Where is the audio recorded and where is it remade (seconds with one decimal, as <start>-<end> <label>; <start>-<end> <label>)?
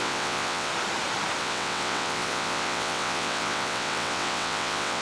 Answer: 0.0-0.7 remade; 0.7-1.4 recorded; 1.4-5.0 remade